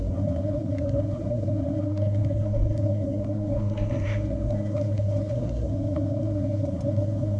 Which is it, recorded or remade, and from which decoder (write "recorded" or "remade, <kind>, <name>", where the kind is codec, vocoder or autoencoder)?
remade, codec, SNAC